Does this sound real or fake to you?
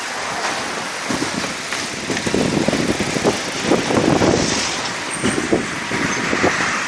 real